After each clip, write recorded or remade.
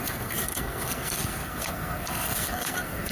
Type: remade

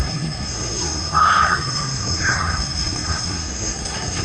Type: remade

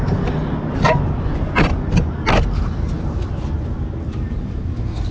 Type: recorded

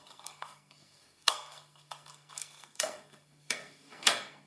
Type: remade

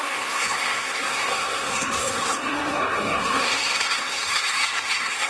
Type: remade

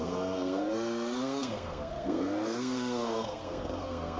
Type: remade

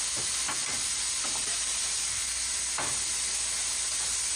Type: recorded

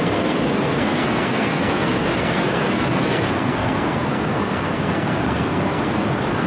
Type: remade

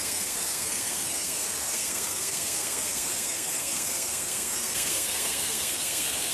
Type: remade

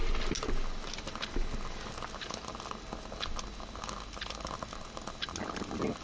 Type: recorded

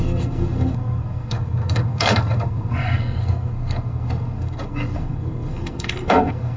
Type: remade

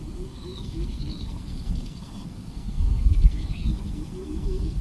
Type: remade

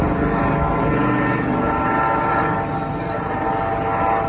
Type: recorded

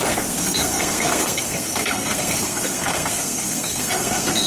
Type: remade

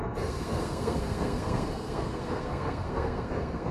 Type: remade